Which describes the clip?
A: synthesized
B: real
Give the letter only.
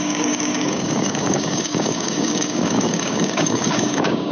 A